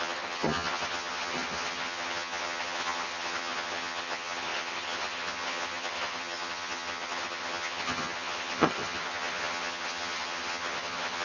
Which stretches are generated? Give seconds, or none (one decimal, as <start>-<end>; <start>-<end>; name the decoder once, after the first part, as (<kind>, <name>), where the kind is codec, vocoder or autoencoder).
0.0-11.2 (vocoder, HiFi-GAN)